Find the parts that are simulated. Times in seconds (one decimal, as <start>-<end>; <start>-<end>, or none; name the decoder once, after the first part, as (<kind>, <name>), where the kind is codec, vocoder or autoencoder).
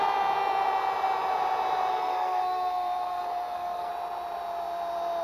1.9-3.9 (codec, SNAC)